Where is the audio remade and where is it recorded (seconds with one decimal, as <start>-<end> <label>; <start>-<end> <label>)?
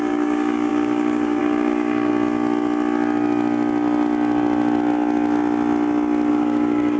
0.0-2.1 remade; 2.1-6.3 recorded; 6.3-7.0 remade